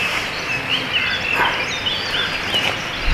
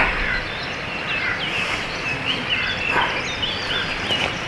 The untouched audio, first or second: first